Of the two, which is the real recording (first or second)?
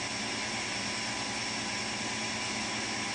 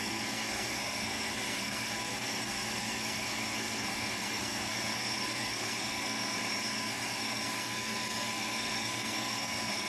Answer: first